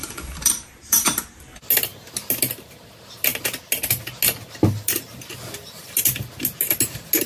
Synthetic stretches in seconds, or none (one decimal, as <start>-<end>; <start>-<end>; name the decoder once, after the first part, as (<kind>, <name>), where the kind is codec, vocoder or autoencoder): 0.0-1.2 (vocoder, BigVGAN v2)